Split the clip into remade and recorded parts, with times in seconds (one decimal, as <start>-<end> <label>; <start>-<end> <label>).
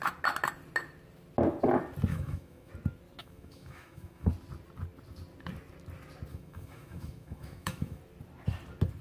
0.0-2.1 recorded; 2.1-2.7 remade; 2.7-3.2 recorded; 3.2-4.3 remade; 4.3-6.3 recorded; 6.3-8.0 remade; 8.0-9.0 recorded